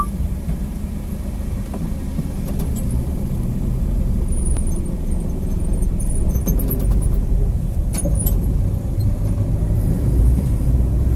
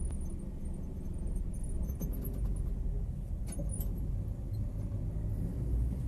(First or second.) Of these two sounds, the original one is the second